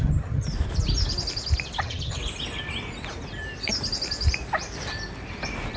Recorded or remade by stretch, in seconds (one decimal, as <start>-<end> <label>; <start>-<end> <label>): 0.0-0.5 remade; 0.5-1.8 recorded; 1.8-2.2 remade; 2.2-5.8 recorded